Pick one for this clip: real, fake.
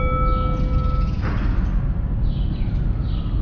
real